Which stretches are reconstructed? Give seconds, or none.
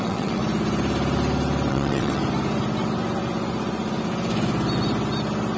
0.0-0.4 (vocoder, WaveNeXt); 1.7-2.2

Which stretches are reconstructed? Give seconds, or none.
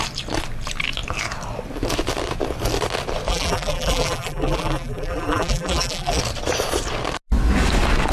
3.3-6.2 (vocoder, BigVGAN v2)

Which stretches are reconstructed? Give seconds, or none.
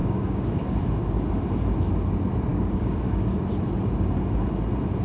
0.0-0.8 (codec, DAC); 2.5-3.4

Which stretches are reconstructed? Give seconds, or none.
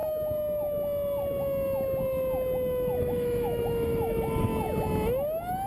3.0-4.5 (autoencoder, DAC-VAE)